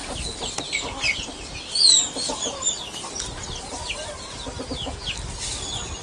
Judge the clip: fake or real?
real